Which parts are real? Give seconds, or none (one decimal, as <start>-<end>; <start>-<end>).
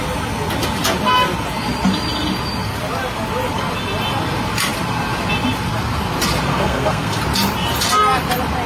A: 0.0-6.5; 7.2-8.7